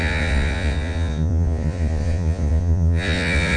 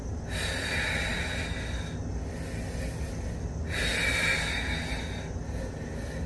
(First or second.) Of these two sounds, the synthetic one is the first